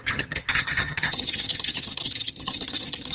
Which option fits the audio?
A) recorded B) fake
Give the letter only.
B